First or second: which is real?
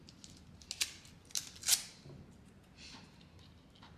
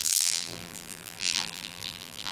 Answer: first